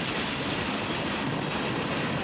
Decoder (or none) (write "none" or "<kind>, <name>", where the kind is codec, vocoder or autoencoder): none